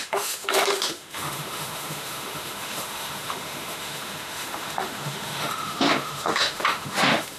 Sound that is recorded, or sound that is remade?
remade